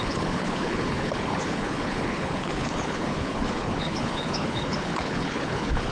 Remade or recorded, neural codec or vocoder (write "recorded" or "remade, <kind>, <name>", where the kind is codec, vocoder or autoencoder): remade, codec, HILCodec